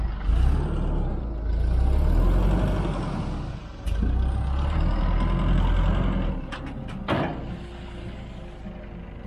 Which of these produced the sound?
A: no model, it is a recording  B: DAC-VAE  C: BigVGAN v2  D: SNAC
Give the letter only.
A